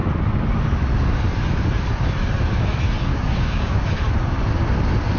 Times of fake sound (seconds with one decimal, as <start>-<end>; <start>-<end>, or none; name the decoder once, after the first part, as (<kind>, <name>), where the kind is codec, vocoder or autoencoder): 3.1-3.8 (codec, DAC)